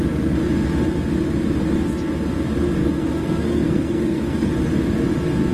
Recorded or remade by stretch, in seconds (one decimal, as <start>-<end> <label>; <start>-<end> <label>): 0.0-2.8 recorded; 2.8-4.5 remade; 4.5-5.5 recorded